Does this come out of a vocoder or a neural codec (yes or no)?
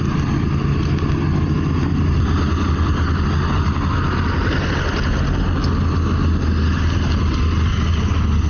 no